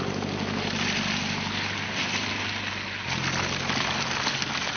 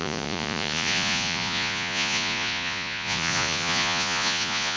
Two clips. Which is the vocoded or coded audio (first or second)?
second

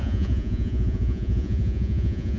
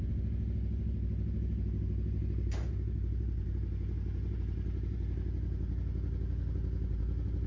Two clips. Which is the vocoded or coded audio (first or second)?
first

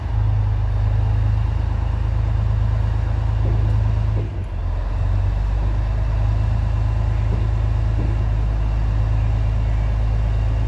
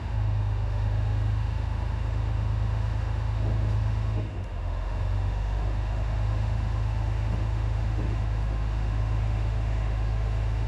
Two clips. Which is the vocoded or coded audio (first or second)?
second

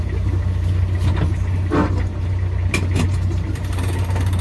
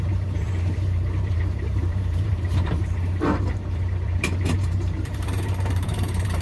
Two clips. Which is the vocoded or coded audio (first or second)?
second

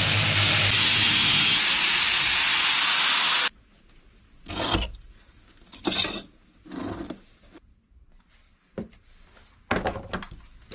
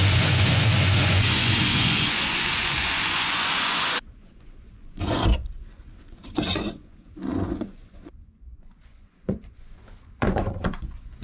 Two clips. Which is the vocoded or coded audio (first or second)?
second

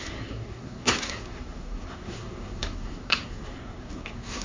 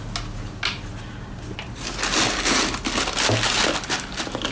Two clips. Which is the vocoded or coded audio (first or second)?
first